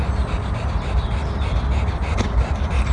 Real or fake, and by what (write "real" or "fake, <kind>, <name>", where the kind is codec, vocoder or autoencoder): real